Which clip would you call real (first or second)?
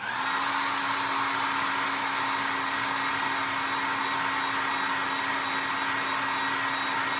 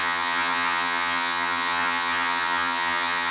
first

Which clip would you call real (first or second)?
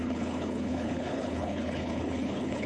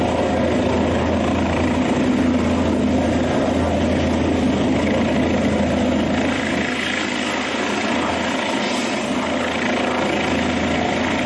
second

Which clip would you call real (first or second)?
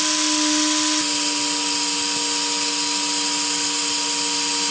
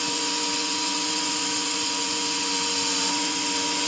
first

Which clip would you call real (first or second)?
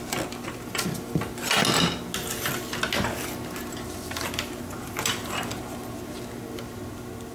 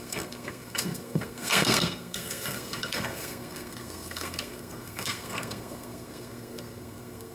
first